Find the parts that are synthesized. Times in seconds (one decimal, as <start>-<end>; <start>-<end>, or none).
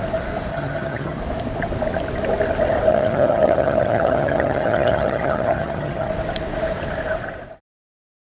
0.5-1.2; 2.9-6.1